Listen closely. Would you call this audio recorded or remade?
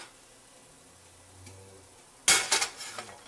recorded